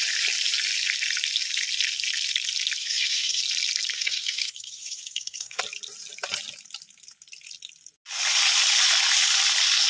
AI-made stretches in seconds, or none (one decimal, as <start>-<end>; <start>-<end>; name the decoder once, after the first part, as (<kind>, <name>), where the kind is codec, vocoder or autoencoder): 2.8-3.4 (codec, SNAC); 3.9-5.6